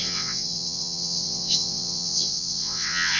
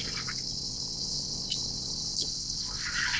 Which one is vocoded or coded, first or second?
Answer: first